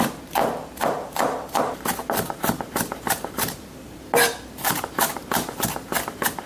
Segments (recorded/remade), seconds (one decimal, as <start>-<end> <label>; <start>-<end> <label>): 0.0-6.5 recorded